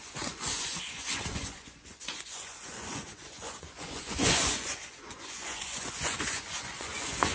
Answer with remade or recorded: remade